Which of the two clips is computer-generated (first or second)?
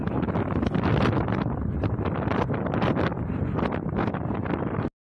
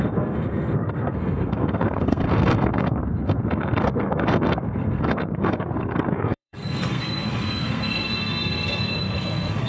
second